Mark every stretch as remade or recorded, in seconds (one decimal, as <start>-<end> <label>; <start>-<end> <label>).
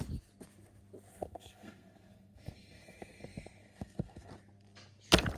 0.0-1.1 recorded; 1.1-4.3 remade; 4.3-5.4 recorded